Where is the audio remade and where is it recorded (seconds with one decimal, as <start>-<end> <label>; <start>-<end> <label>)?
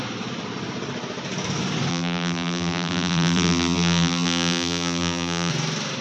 0.0-1.9 recorded; 1.9-5.5 remade; 5.5-6.0 recorded